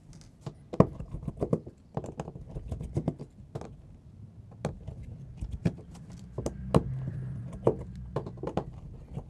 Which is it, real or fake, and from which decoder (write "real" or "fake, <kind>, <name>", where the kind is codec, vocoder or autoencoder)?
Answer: real